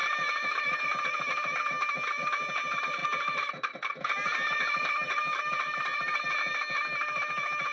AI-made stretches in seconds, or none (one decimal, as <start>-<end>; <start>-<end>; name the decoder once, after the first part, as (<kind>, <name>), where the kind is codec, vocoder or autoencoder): 0.0-0.8 (vocoder, BigVGAN v2)